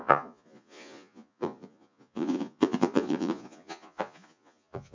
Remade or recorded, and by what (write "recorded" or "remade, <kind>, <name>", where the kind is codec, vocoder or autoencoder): remade, vocoder, Vocos